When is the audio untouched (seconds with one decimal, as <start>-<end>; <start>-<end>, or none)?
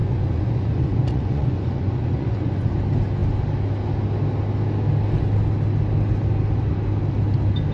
2.7-7.7